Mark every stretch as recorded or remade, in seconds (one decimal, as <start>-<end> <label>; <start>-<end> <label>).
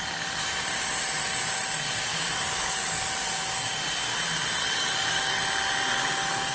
0.0-2.1 recorded; 2.1-3.0 remade; 3.0-4.6 recorded; 4.6-5.4 remade; 5.4-6.5 recorded